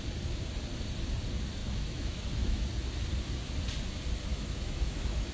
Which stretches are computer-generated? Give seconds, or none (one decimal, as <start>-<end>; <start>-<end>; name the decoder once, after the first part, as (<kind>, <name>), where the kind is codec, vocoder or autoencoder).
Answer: 1.6-2.6 (autoencoder, DAC-VAE); 4.3-5.3